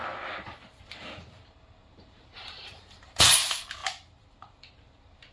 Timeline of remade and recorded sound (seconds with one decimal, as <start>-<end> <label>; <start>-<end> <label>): 0.0-0.8 recorded; 0.8-5.3 remade